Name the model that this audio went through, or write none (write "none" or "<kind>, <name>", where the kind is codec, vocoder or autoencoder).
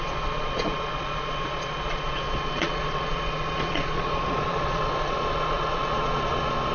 vocoder, Vocos